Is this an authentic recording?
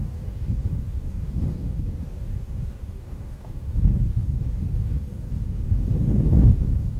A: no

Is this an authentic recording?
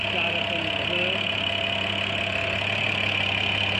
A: yes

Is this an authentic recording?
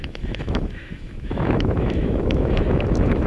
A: no